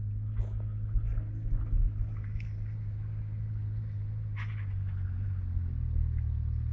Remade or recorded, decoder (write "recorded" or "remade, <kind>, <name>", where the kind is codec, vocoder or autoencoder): recorded